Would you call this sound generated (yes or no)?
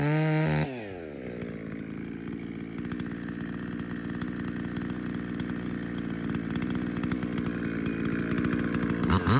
no